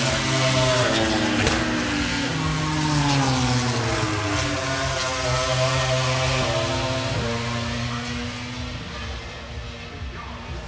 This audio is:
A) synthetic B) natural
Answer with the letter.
B